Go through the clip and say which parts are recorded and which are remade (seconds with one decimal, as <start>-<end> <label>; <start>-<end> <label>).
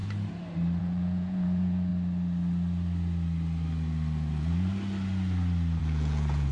0.0-0.8 recorded; 0.8-1.9 remade; 1.9-5.8 recorded; 5.8-6.5 remade